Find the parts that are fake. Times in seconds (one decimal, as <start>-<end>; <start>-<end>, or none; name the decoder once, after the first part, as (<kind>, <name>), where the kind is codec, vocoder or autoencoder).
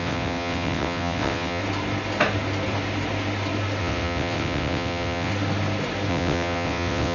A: 0.0-1.6 (vocoder, WaveNeXt); 3.8-5.3; 6.1-7.1